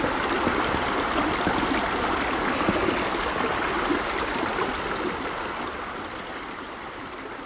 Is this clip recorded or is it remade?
recorded